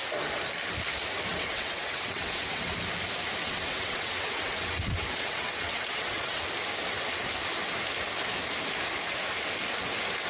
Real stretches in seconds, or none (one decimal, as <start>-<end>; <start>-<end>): 0.0-1.3; 2.7-3.4; 6.4-10.3